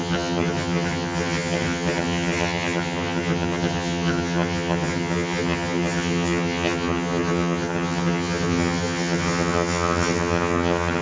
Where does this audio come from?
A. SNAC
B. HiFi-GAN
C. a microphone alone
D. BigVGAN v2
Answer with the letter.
B